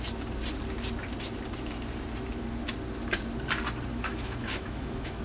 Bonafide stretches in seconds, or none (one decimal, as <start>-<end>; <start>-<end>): 0.0-3.9